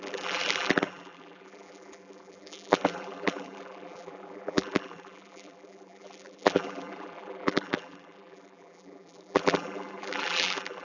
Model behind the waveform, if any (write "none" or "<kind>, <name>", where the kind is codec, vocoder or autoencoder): vocoder, BigVGAN v2